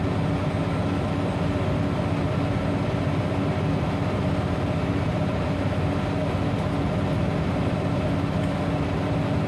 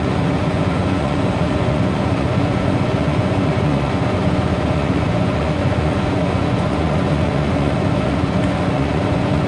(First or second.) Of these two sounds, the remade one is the second